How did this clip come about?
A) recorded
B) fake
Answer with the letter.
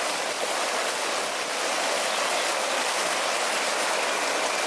A